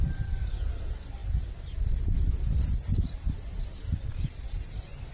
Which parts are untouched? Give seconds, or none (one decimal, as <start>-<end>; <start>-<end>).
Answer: 0.0-5.1